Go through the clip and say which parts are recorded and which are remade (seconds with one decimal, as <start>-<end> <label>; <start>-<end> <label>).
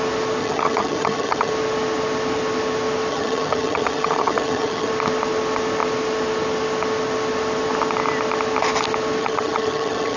0.0-0.4 recorded; 0.4-1.5 remade; 1.5-3.1 recorded; 3.1-4.9 remade; 4.9-9.2 recorded; 9.2-10.2 remade